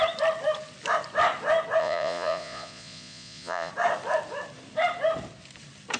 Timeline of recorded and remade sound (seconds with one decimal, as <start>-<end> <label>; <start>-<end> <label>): 0.0-1.8 recorded; 1.8-3.7 remade; 3.7-6.0 recorded